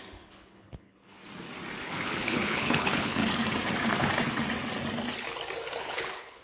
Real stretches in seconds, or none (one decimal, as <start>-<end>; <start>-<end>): 1.2-1.8; 3.2-5.8

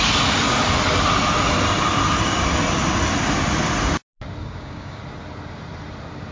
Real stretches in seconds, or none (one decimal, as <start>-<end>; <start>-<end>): 0.0-4.4; 5.0-6.3

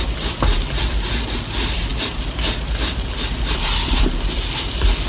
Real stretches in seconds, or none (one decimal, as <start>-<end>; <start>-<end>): 0.0-5.1

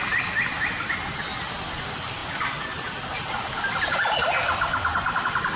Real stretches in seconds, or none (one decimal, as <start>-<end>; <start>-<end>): 0.0-5.6